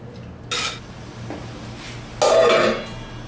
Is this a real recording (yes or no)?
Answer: yes